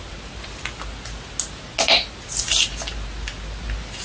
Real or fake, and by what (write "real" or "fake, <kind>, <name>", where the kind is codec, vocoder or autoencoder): real